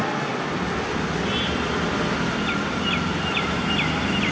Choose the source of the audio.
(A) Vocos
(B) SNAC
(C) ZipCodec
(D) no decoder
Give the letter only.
D